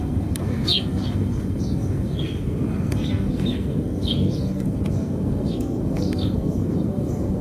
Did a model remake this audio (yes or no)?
yes